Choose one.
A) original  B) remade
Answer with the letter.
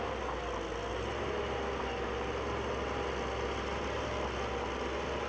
A